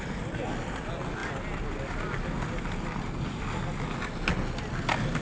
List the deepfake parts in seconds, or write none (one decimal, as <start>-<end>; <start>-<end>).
none